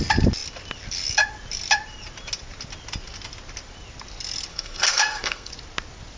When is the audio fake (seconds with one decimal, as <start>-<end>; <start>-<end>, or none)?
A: 4.5-5.5